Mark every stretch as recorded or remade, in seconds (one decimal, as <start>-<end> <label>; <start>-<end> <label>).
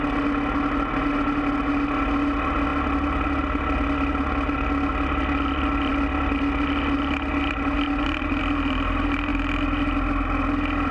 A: 0.0-10.9 recorded